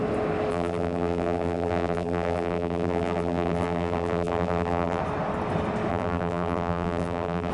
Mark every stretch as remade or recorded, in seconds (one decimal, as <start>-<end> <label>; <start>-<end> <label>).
0.0-0.5 recorded; 0.5-5.0 remade; 5.0-5.9 recorded; 5.9-7.5 remade